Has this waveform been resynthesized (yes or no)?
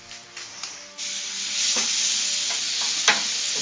no